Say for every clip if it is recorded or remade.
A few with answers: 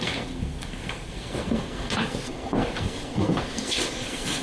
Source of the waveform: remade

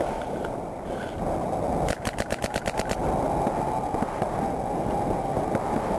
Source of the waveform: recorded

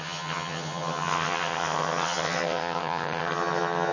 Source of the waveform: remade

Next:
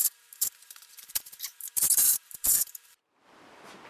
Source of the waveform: remade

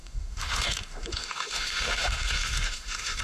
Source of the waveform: remade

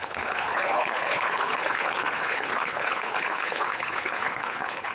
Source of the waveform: remade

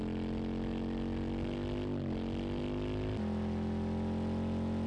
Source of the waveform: recorded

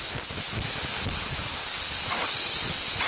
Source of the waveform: recorded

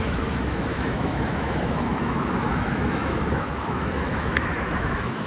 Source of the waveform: remade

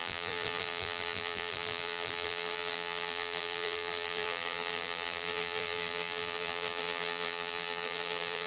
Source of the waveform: remade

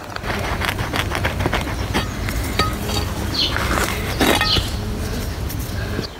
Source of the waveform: recorded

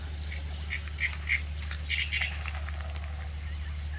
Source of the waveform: recorded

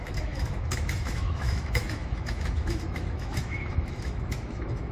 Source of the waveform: remade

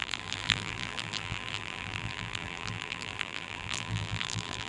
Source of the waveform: remade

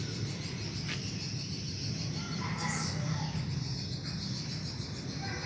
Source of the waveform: recorded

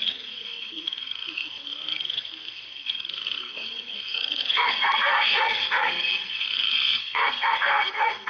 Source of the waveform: remade